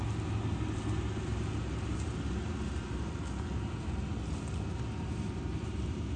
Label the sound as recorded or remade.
recorded